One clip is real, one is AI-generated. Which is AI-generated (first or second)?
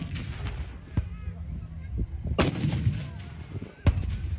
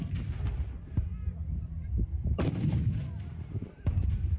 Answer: second